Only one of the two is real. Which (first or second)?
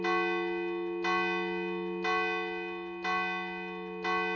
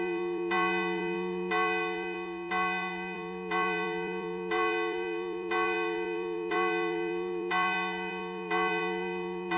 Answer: first